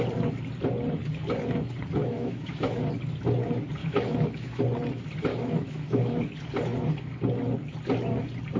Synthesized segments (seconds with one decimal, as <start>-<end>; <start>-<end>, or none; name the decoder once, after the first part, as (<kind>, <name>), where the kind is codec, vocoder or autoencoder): 2.0-2.8 (autoencoder, DAC-VAE); 3.8-4.6; 5.3-6.2